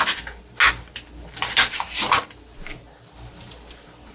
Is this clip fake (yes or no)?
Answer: no